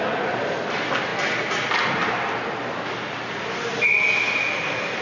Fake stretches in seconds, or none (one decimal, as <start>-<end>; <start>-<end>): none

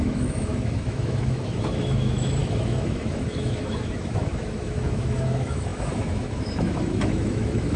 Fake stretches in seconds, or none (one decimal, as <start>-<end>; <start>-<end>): 0.0-7.8

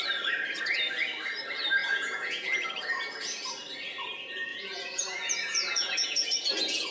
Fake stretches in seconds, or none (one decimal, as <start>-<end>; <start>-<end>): 1.8-2.7; 4.5-6.9

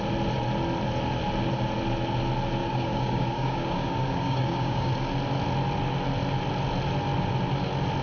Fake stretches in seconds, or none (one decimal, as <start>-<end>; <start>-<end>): 2.6-4.9

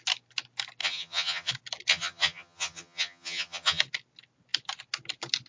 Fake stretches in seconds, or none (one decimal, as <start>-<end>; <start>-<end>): 0.8-1.5; 1.9-3.8